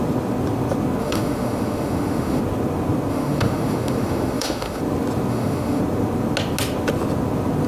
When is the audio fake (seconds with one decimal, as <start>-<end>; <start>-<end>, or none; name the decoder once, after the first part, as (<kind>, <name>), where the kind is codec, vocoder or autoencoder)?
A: 1.0-2.4 (autoencoder, DAC-VAE); 3.1-4.8; 5.3-5.8